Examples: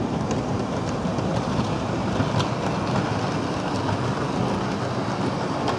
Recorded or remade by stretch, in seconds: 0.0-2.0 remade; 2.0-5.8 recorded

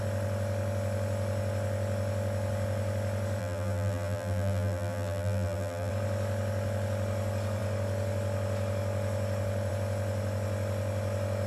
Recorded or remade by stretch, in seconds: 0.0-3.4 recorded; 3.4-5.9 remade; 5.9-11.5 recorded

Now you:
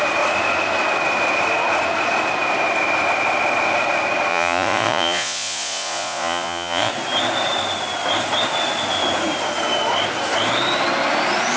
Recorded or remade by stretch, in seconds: 0.0-4.3 recorded; 4.3-6.9 remade; 6.9-11.6 recorded

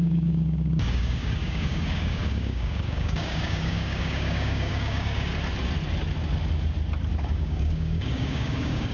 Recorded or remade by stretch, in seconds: 0.0-5.3 remade; 5.3-7.2 recorded; 7.2-8.9 remade

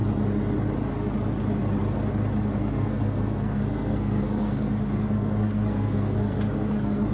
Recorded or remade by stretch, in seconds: 0.0-2.6 recorded; 2.6-7.1 remade

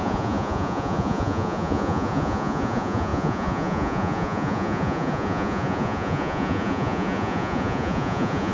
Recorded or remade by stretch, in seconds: 0.0-8.5 remade